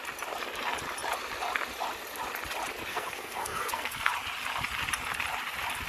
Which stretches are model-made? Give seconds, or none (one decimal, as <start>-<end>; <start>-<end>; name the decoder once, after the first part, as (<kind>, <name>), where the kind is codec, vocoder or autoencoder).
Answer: 2.9-4.1 (codec, SNAC)